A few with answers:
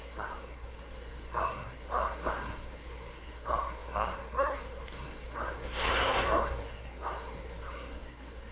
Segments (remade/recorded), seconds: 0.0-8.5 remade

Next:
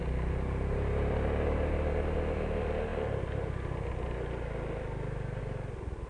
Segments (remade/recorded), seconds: 0.0-6.1 recorded

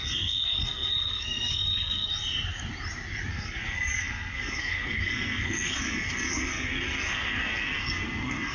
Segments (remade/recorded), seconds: 0.0-2.1 remade; 2.1-3.3 recorded; 3.3-8.5 remade